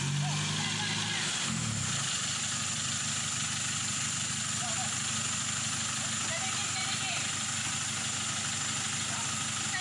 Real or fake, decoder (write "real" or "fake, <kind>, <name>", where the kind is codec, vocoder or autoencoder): real